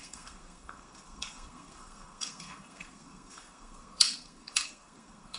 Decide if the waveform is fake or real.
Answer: fake